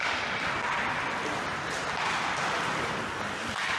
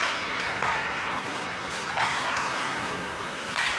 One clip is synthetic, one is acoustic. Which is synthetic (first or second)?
second